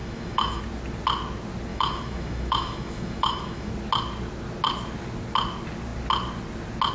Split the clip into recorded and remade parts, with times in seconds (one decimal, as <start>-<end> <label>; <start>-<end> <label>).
0.0-0.6 remade; 0.6-1.7 recorded; 1.7-3.7 remade; 3.7-6.9 recorded